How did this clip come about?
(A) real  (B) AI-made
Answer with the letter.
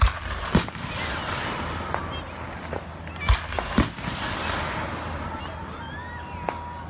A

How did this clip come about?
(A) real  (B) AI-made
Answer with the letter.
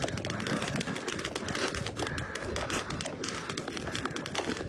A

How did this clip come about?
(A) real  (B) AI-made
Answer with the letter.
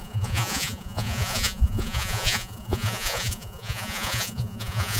B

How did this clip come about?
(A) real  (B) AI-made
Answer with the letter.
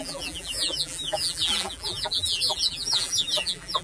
B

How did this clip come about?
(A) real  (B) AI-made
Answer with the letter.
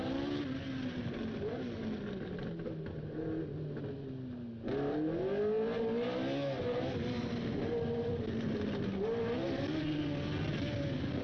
A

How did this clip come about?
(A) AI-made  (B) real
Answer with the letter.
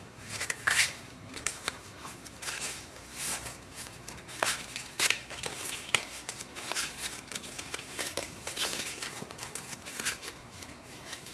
A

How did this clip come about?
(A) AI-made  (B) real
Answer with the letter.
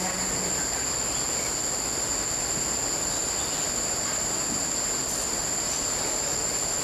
B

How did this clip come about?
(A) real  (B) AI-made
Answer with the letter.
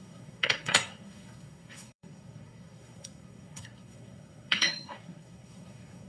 B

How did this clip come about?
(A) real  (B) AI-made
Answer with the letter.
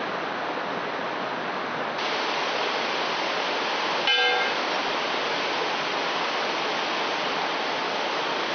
A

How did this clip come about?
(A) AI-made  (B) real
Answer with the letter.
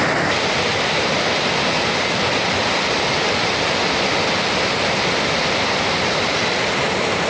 B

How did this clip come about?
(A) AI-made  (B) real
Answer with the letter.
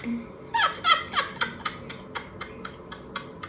B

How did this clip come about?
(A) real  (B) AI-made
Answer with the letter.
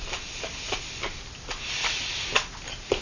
A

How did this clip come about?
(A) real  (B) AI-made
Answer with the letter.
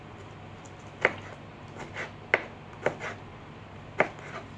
A